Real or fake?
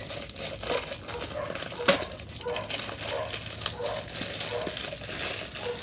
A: real